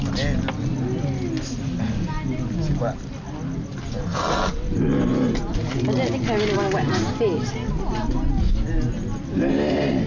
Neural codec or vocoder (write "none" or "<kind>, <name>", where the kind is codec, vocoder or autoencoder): none